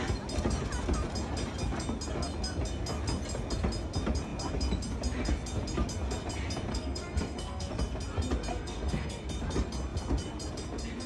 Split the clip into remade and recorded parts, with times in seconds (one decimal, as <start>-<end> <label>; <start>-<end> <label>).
0.0-6.7 recorded; 6.7-7.7 remade; 7.7-8.5 recorded; 8.5-9.2 remade; 9.2-11.1 recorded